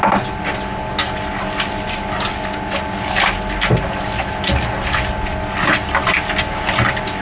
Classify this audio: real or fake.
real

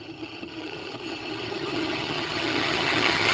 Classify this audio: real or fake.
fake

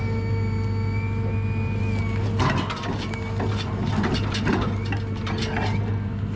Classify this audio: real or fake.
real